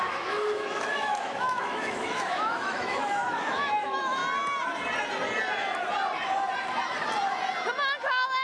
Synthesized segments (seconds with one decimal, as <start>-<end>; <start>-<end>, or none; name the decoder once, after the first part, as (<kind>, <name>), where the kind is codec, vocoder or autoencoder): 0.0-4.2 (autoencoder, DAC-VAE); 8.0-8.4